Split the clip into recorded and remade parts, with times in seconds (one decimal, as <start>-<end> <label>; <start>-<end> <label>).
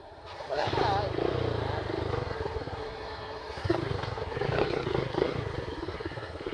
0.0-0.7 remade; 0.7-2.1 recorded; 2.1-6.5 remade